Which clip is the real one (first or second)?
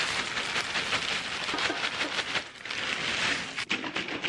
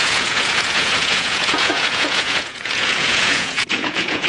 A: first